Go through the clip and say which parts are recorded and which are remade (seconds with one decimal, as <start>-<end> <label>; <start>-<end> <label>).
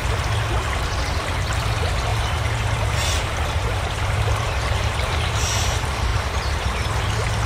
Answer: 0.0-2.1 recorded; 2.1-5.3 remade; 5.3-6.1 recorded; 6.1-6.9 remade; 6.9-7.5 recorded